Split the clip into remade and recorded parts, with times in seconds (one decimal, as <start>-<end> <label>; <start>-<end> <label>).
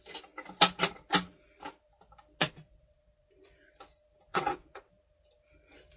0.0-2.4 recorded; 2.4-2.9 remade; 2.9-4.3 recorded; 4.3-4.9 remade; 4.9-6.0 recorded